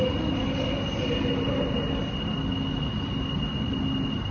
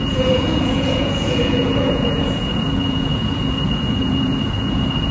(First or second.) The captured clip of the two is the first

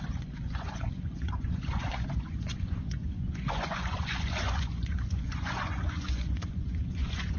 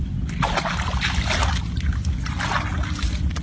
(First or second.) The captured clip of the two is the second